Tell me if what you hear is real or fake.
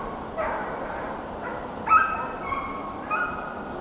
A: real